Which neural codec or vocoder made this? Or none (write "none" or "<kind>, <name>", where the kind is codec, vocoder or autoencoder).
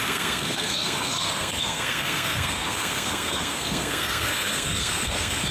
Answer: codec, SNAC